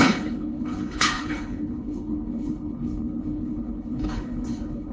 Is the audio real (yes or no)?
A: no